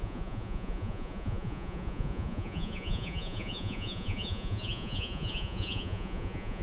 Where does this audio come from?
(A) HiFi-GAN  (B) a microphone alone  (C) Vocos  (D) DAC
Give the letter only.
C